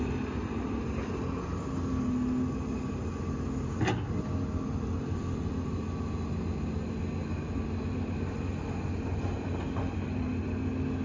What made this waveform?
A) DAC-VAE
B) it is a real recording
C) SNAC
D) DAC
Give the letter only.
B